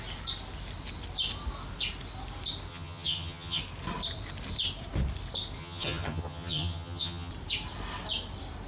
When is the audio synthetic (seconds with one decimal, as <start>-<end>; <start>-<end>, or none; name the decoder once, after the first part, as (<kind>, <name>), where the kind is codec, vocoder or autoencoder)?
2.7-3.6 (vocoder, HiFi-GAN); 5.6-7.3